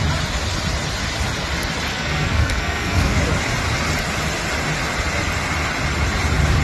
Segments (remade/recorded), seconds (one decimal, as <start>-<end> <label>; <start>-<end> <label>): 0.0-1.9 recorded; 1.9-3.2 remade; 3.2-6.6 recorded

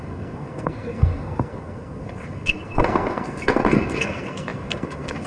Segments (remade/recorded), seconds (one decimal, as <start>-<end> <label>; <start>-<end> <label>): 0.0-5.3 remade